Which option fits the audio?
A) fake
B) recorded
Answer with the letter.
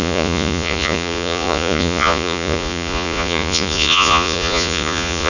A